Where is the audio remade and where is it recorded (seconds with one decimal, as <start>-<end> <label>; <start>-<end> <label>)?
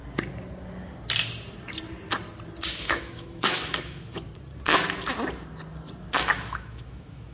0.0-2.7 recorded; 2.7-4.3 remade; 4.3-6.2 recorded; 6.2-7.3 remade